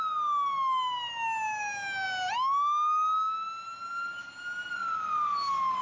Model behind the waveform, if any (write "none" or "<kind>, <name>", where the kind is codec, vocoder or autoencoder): none